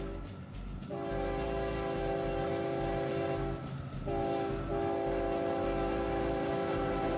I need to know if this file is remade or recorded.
recorded